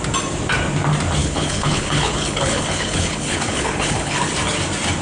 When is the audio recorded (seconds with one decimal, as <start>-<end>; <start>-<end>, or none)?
0.0-1.2; 4.2-5.0